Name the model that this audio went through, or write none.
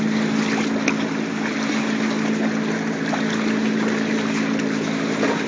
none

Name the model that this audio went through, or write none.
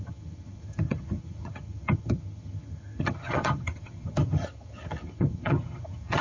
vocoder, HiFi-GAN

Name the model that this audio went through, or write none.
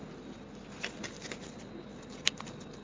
none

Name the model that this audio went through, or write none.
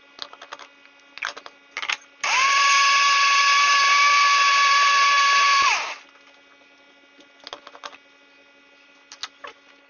none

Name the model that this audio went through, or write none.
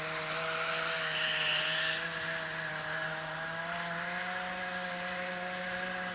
none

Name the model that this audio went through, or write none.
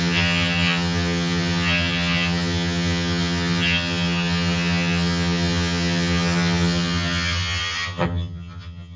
vocoder, HiFi-GAN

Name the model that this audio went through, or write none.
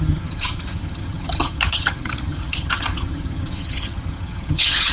vocoder, HiFi-GAN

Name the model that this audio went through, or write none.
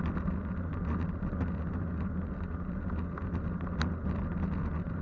none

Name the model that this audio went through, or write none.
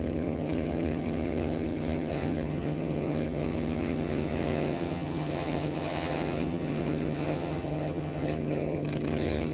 vocoder, HiFi-GAN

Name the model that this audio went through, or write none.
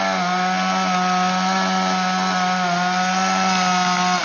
none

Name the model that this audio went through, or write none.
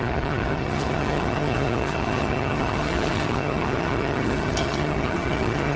vocoder, HiFi-GAN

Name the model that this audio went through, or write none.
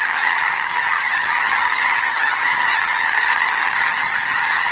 vocoder, HiFi-GAN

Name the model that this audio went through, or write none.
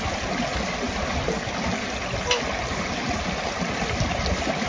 none